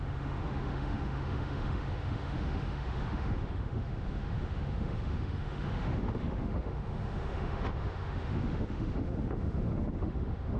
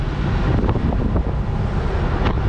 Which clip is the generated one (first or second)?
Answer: first